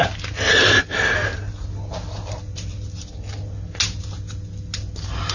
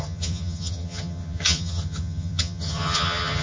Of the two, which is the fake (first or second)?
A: second